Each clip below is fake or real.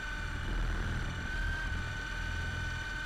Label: fake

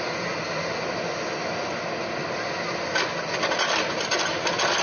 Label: real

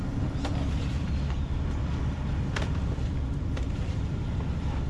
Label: fake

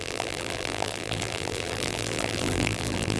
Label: fake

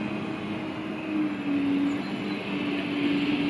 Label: real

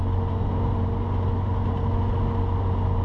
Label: real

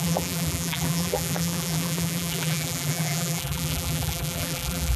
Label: fake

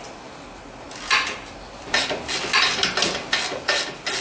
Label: real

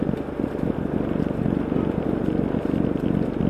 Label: real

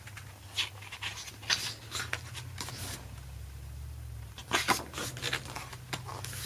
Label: real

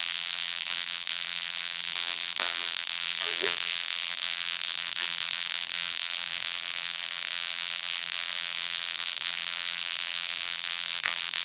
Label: fake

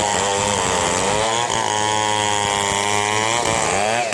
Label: real